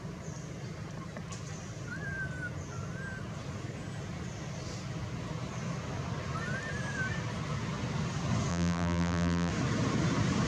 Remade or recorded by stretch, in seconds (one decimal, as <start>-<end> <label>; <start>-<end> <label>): 0.0-8.5 recorded; 8.5-9.5 remade; 9.5-10.5 recorded